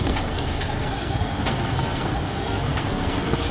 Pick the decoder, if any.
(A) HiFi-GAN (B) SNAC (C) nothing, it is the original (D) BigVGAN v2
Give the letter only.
B